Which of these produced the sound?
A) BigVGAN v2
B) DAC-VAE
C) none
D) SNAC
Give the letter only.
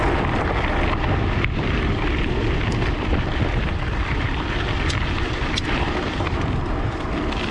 A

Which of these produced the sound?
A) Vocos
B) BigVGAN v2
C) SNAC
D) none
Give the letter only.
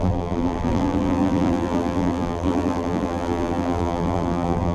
B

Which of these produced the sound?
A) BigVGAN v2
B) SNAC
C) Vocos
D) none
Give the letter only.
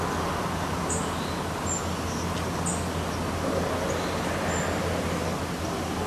D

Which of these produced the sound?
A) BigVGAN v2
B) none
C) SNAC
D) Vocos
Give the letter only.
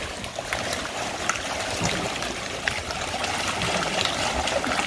A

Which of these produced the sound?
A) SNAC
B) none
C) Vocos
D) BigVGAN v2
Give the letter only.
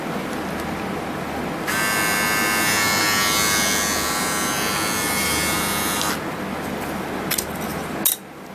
B